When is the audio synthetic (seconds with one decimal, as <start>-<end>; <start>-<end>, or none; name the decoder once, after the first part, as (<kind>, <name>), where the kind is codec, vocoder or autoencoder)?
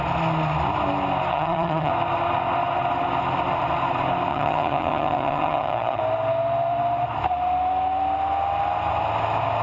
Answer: 1.3-1.9 (vocoder, HiFi-GAN); 4.3-6.0